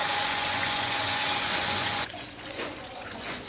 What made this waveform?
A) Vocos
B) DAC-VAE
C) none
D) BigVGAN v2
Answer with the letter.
A